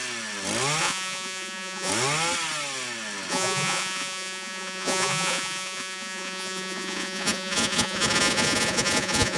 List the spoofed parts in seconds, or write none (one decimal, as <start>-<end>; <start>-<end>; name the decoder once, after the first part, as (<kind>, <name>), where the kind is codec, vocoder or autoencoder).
0.8-1.9 (vocoder, Vocos); 3.3-9.4